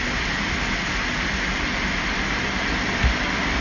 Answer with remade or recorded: recorded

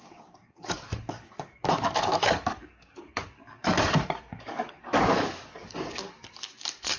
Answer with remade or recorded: remade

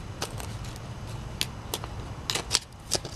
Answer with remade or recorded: recorded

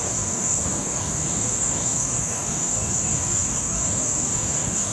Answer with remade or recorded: remade